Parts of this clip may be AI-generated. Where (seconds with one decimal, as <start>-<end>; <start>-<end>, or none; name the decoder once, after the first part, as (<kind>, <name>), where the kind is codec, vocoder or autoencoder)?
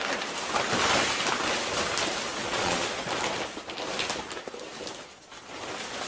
2.3-3.1 (vocoder, Vocos)